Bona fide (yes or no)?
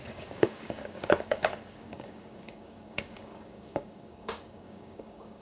no